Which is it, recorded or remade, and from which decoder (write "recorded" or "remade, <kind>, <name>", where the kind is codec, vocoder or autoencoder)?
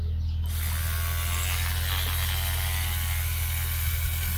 recorded